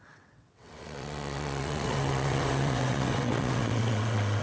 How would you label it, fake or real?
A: fake